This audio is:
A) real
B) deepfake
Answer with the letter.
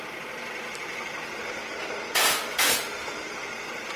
A